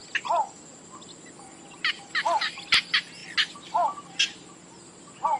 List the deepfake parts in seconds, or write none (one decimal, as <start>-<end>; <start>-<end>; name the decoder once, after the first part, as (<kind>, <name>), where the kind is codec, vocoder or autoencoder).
none